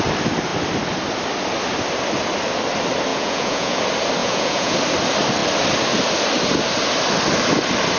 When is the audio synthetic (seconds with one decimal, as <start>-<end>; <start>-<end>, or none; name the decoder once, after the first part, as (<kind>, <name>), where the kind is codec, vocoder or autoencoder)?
3.1-3.8 (vocoder, Vocos); 4.2-4.7